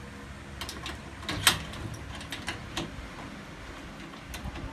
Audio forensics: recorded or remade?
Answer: recorded